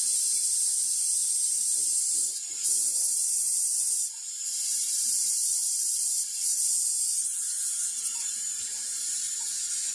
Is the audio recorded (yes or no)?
no